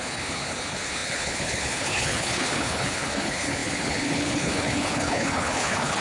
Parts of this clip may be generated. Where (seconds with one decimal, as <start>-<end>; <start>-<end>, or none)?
0.0-6.0